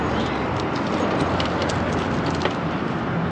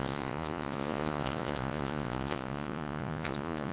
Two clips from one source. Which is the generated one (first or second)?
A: second